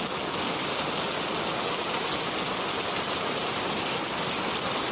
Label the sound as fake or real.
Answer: real